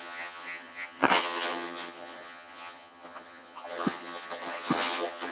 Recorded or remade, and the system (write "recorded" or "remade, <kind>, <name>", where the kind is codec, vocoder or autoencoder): remade, vocoder, HiFi-GAN